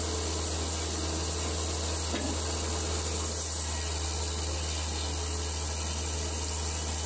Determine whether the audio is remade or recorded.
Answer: recorded